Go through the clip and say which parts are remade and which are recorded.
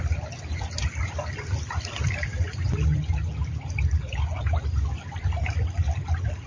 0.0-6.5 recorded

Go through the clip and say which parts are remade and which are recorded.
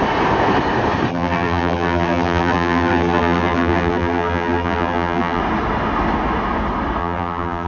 0.0-1.1 recorded; 1.1-5.4 remade; 5.4-7.0 recorded; 7.0-7.7 remade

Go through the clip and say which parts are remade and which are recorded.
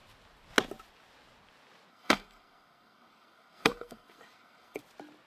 0.0-1.9 recorded; 1.9-4.8 remade; 4.8-5.3 recorded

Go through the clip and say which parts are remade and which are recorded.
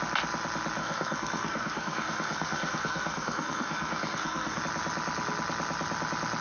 0.0-0.8 recorded; 0.8-4.6 remade; 4.6-6.4 recorded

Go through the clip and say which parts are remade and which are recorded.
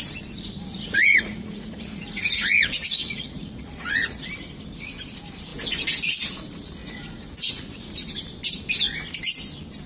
0.0-0.7 recorded; 0.7-4.3 remade; 4.3-6.8 recorded; 6.8-8.1 remade; 8.1-9.9 recorded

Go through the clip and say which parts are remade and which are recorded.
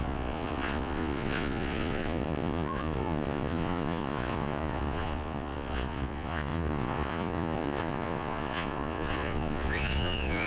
0.0-10.5 remade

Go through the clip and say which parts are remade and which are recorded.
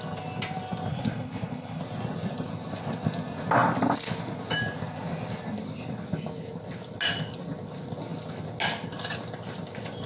0.0-0.9 recorded; 0.9-1.8 remade; 1.8-10.1 recorded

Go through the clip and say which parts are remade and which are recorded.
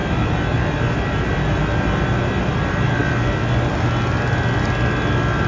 0.0-5.5 recorded